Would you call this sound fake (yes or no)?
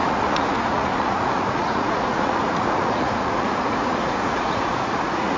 yes